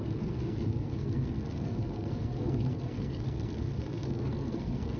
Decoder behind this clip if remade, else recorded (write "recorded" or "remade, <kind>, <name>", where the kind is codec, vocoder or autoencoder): remade, codec, SNAC